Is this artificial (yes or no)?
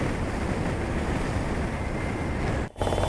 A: no